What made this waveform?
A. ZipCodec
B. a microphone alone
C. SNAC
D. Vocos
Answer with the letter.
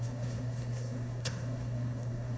C